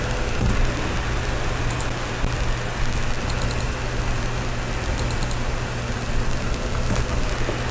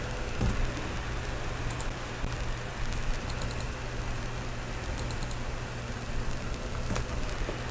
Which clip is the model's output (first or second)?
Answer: second